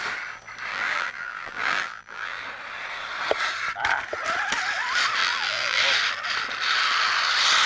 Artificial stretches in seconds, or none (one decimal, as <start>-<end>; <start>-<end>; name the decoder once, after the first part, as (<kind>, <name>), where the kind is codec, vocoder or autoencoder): 0.7-2.4 (vocoder, BigVGAN v2); 5.2-5.8

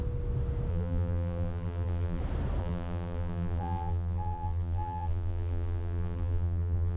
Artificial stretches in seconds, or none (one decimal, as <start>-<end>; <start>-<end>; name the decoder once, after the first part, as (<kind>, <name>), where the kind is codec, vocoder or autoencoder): 0.7-2.2 (vocoder, BigVGAN v2); 2.6-7.0

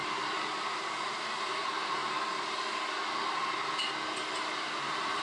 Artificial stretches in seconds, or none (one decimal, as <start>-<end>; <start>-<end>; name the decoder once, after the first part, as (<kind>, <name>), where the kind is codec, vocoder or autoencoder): 0.0-2.0 (vocoder, BigVGAN v2); 4.4-5.2

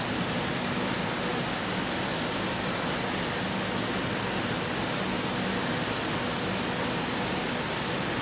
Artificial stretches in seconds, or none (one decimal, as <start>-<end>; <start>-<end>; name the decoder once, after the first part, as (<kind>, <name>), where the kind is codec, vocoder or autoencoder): none

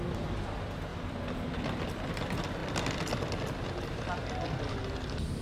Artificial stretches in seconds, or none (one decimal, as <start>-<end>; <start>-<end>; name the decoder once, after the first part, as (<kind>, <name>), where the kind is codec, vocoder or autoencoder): 0.9-2.0 (vocoder, BigVGAN v2)

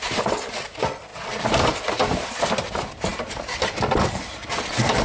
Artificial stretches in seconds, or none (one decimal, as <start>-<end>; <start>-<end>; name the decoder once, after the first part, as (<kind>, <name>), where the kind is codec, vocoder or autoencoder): 1.1-2.0 (vocoder, BigVGAN v2); 3.1-3.6